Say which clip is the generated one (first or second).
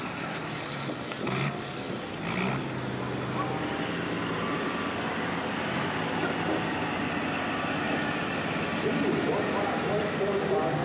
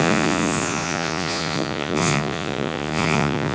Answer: second